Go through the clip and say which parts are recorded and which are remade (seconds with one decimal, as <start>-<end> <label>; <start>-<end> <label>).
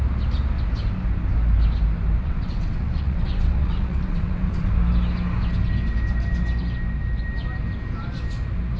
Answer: 0.0-2.2 recorded; 2.2-4.7 remade; 4.7-8.8 recorded